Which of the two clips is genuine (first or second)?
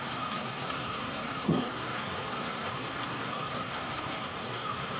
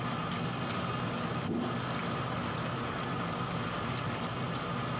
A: second